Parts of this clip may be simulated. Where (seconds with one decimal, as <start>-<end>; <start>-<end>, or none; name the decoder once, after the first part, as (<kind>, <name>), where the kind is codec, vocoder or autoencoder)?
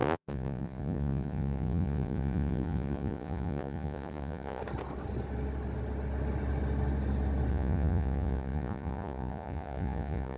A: 0.0-4.6 (vocoder, Vocos); 7.5-10.4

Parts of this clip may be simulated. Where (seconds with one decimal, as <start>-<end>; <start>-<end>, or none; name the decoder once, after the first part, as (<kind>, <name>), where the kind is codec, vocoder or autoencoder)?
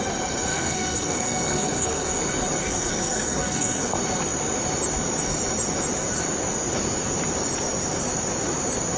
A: 0.5-2.2 (codec, SNAC); 2.6-3.9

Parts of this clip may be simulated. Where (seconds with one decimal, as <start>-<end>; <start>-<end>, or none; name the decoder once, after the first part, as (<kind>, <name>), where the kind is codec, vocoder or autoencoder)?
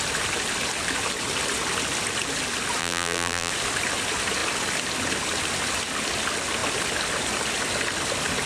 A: 2.8-3.5 (vocoder, BigVGAN v2)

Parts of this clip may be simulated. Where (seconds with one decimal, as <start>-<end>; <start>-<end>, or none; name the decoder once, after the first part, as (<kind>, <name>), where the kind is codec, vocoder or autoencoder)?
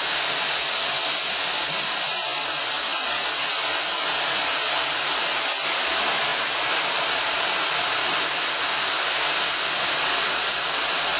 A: none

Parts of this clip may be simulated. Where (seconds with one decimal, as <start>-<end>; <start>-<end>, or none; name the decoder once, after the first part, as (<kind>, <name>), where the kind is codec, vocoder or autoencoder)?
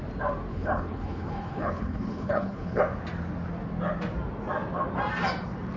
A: 0.5-2.8 (codec, HILCodec)